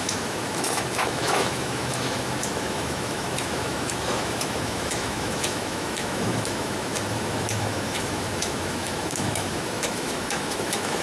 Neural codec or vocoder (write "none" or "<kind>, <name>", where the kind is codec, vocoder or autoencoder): autoencoder, DAC-VAE